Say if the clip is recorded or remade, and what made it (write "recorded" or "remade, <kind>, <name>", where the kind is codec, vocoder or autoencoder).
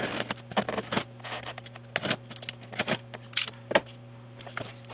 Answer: recorded